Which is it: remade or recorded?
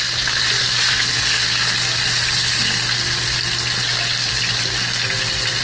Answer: recorded